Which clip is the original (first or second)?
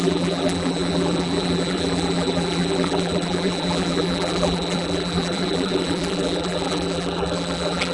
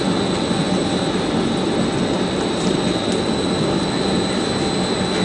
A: second